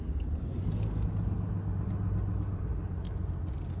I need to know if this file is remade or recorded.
recorded